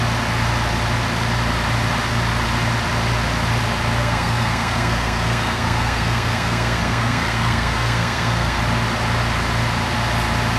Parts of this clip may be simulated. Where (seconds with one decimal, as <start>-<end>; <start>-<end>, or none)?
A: 4.0-8.6